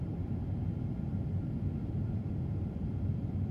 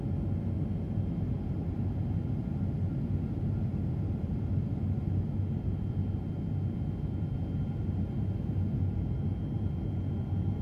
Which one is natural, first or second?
second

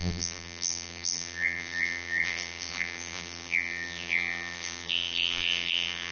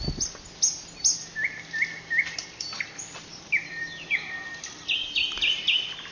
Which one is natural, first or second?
second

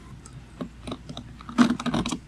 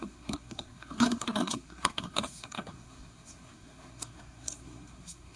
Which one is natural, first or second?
first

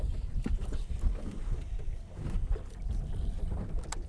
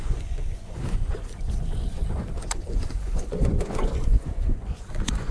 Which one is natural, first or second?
first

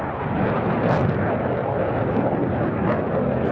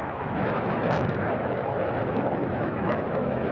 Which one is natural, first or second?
first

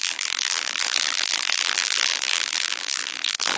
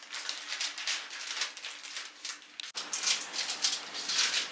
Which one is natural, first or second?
second